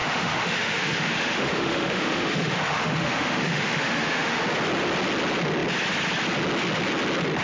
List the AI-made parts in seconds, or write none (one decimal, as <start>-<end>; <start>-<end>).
0.0-4.4